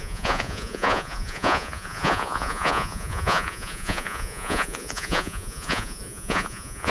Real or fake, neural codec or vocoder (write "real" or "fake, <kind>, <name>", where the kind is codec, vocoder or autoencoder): fake, vocoder, Vocos